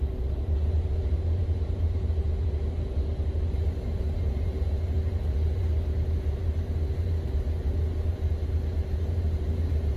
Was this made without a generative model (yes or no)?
no